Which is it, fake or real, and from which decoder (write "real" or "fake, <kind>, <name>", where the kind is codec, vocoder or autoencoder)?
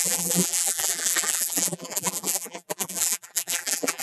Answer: fake, vocoder, BigVGAN v2